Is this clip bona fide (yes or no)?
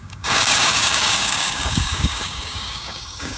no